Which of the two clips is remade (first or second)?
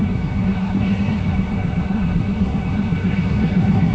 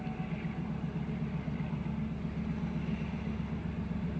first